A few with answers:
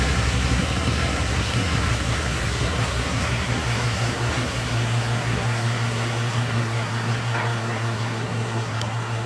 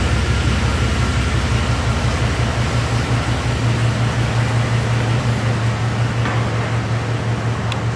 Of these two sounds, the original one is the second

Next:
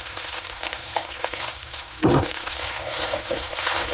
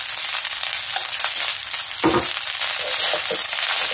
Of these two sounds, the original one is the second